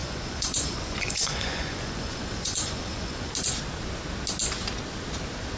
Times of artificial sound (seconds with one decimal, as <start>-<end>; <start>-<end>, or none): 0.0-3.3